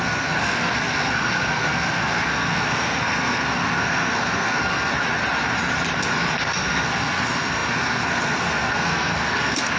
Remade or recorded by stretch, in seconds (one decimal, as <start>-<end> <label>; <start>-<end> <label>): 0.0-4.9 remade; 4.9-6.4 recorded; 6.4-9.8 remade